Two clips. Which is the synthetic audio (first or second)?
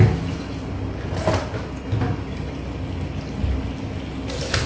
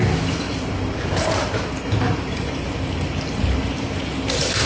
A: second